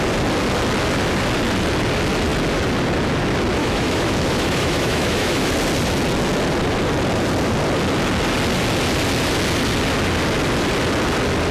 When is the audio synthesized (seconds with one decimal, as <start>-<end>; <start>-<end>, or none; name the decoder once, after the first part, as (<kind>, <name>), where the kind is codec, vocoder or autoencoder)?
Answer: 3.6-5.5 (autoencoder, DAC-VAE)